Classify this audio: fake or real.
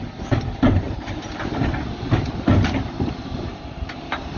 fake